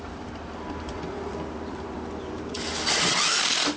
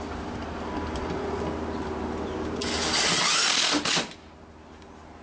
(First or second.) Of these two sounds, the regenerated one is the first